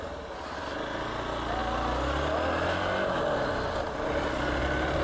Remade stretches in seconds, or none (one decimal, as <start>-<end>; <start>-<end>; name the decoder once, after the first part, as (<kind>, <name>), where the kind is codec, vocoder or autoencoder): none